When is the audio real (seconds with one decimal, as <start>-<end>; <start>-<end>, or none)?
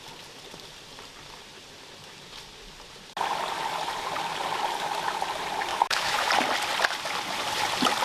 0.0-5.7; 6.3-8.0